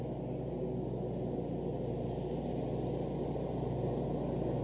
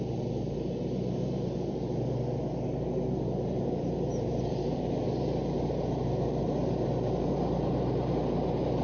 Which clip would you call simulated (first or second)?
second